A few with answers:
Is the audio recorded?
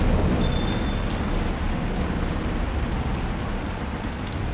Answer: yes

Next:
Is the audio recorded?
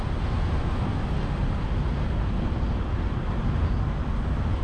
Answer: yes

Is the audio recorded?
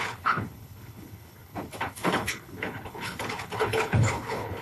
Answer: no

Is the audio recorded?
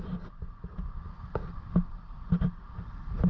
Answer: yes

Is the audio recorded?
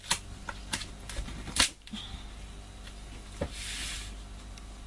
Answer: yes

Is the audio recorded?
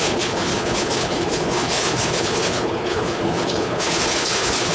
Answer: no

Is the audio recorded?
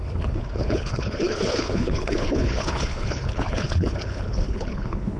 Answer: no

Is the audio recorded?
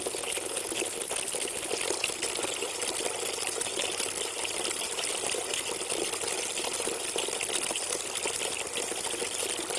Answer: yes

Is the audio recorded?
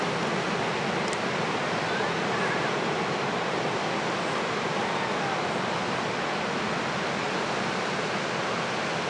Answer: yes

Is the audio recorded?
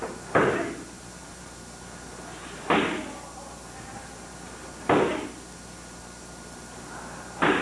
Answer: yes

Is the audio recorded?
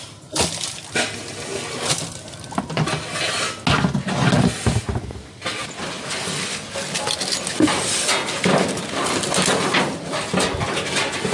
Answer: yes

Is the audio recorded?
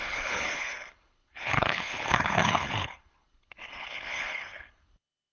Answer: no